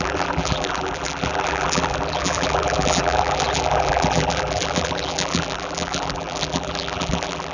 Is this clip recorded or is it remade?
remade